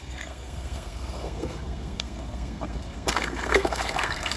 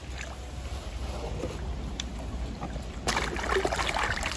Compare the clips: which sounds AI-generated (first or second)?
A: first